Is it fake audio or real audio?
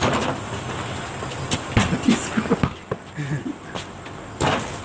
real